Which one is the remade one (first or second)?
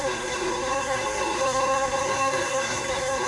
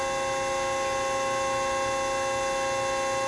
first